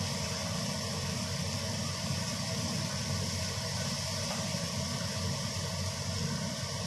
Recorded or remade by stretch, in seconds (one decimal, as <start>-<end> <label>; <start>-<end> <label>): 0.0-6.9 recorded